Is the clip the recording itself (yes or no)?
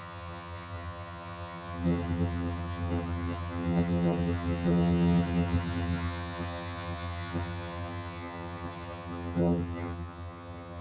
no